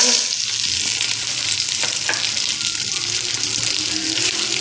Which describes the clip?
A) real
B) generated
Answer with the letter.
A